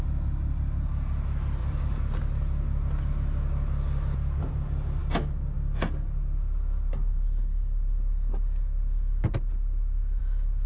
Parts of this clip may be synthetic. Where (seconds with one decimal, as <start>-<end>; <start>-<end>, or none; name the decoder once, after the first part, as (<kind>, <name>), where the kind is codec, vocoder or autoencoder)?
1.6-2.2 (vocoder, BigVGAN v2)